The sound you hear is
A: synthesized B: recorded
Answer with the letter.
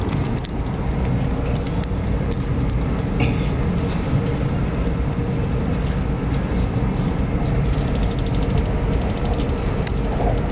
B